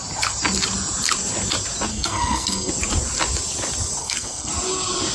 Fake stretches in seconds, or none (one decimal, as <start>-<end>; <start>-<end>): 1.9-2.7; 4.0-4.5